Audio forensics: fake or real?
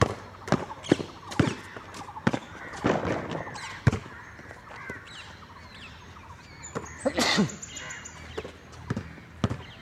real